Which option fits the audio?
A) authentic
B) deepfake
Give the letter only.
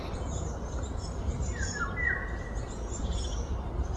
A